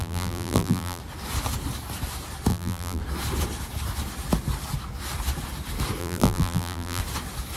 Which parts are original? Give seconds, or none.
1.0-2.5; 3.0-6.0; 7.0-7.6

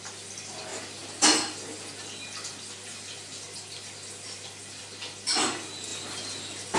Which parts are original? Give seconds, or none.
0.0-6.8

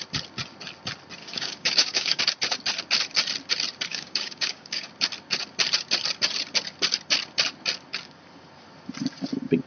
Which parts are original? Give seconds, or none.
0.0-1.2; 2.2-3.9; 4.9-9.7

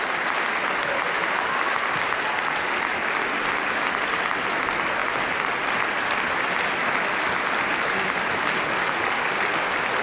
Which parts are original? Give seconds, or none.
0.0-10.0

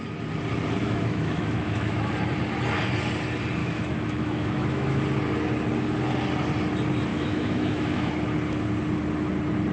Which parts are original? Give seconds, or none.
0.0-0.8; 2.1-3.6; 5.0-7.1; 8.1-9.7

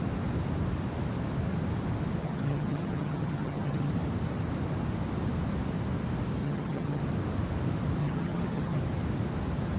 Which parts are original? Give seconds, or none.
0.0-2.2; 3.9-6.4; 7.0-8.0; 8.8-9.8

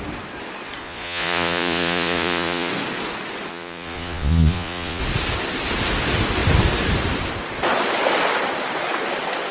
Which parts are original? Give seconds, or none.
0.0-0.8; 2.7-3.5; 5.0-9.5

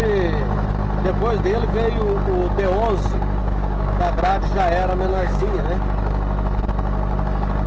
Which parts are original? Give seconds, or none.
0.0-3.4; 4.4-5.1; 5.6-7.7